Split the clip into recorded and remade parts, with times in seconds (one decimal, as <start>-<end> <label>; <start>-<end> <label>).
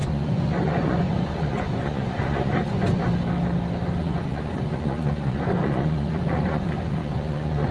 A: 0.0-3.0 remade; 3.0-4.0 recorded; 4.0-7.7 remade